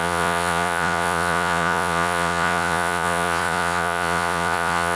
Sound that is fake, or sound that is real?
fake